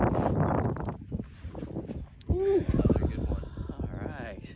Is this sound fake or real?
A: real